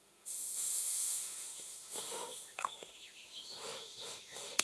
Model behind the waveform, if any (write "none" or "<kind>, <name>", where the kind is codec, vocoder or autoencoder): autoencoder, DAC-VAE